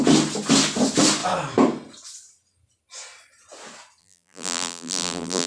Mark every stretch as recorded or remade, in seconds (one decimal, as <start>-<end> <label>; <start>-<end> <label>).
0.0-4.0 recorded; 4.0-5.5 remade